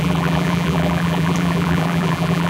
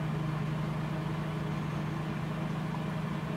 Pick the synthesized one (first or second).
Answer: first